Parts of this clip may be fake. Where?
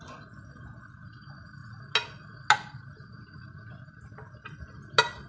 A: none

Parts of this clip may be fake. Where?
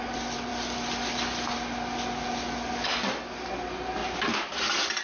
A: none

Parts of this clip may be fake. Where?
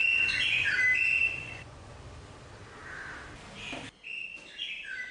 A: 0.0-0.6 (vocoder, Vocos); 1.2-1.9